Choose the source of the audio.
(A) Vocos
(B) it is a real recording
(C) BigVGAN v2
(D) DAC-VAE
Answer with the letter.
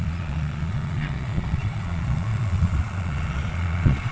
A